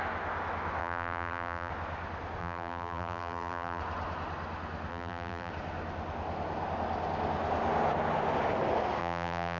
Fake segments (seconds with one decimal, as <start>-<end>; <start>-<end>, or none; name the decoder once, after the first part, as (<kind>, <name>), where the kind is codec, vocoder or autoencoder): 0.8-1.7 (vocoder, BigVGAN v2); 2.4-3.8; 4.9-5.5; 9.0-9.6